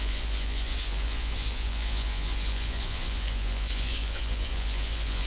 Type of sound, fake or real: fake